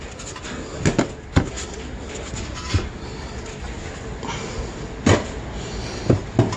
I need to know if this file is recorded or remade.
recorded